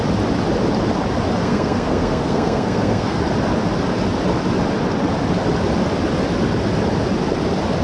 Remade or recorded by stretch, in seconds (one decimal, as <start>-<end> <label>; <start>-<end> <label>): 0.0-1.4 recorded; 1.4-3.2 remade; 3.2-7.8 recorded